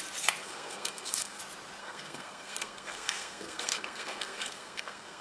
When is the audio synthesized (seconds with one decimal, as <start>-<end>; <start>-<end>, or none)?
0.4-1.4; 1.8-5.2